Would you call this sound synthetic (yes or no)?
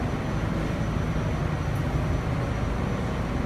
no